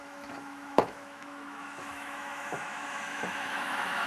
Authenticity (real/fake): fake